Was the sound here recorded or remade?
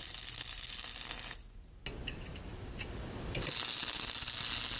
recorded